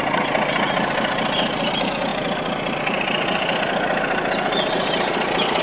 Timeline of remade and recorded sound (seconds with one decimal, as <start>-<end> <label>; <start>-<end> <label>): 0.0-5.6 recorded